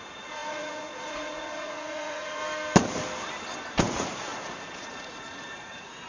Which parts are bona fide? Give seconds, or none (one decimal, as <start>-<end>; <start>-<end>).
2.4-3.8